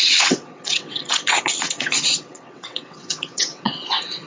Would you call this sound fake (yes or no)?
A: yes